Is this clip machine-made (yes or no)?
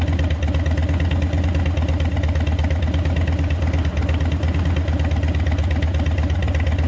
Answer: no